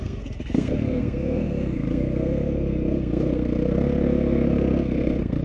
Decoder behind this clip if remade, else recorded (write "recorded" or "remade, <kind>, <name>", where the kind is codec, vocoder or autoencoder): remade, codec, SNAC